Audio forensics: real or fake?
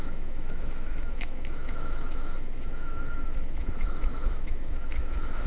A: fake